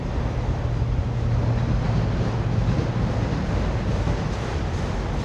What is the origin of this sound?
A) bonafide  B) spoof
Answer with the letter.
A